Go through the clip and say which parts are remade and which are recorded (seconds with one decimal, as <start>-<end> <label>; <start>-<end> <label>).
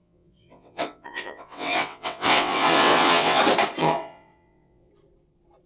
0.0-3.4 remade; 3.4-3.8 recorded; 3.8-4.9 remade; 4.9-5.7 recorded